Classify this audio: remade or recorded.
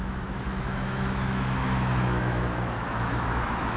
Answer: remade